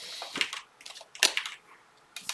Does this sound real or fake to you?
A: real